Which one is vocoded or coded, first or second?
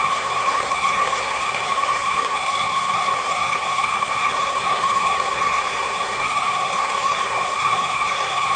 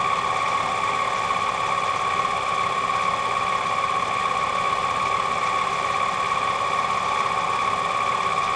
first